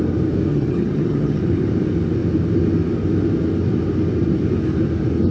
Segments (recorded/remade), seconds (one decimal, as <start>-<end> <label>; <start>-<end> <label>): 0.0-0.5 recorded; 0.5-1.4 remade; 1.4-5.3 recorded